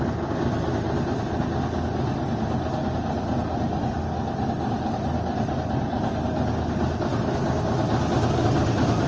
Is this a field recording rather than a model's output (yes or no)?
yes